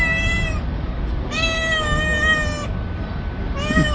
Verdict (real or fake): real